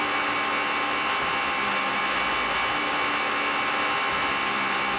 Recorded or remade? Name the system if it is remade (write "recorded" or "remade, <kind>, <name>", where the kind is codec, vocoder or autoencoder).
recorded